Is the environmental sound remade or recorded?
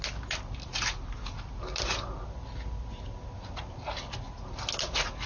recorded